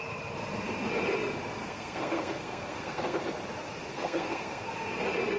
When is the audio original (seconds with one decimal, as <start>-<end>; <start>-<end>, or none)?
0.0-1.6; 3.2-3.9; 4.7-5.4